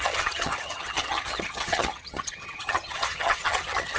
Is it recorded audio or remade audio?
remade